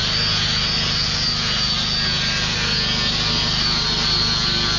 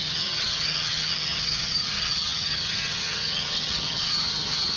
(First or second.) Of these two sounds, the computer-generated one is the second